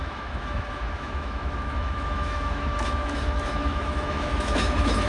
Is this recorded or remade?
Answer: remade